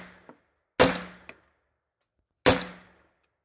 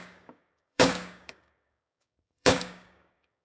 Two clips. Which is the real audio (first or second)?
first